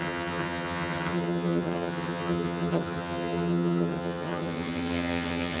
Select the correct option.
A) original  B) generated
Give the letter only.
B